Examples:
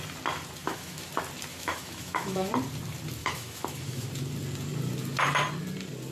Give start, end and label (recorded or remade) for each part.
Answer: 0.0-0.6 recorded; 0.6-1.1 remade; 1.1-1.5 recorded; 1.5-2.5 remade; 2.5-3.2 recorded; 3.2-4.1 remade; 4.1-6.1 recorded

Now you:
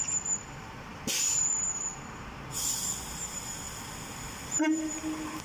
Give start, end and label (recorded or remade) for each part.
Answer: 0.0-5.4 remade

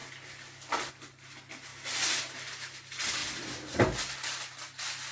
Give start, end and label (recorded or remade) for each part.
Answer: 0.0-5.1 recorded

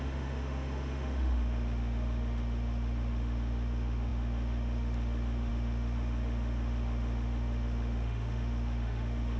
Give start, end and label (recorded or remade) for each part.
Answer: 0.0-9.4 remade

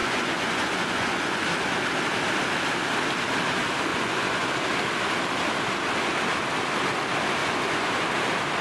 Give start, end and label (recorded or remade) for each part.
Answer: 0.0-1.4 remade; 1.4-3.9 recorded; 3.9-4.5 remade; 4.5-7.4 recorded; 7.4-7.9 remade; 7.9-8.6 recorded

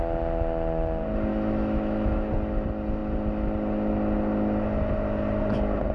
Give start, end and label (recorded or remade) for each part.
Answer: 0.0-1.3 recorded; 1.3-2.3 remade; 2.3-5.9 recorded